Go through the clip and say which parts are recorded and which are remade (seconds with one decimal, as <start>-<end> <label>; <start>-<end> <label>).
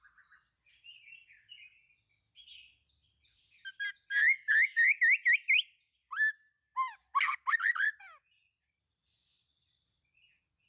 0.0-10.7 recorded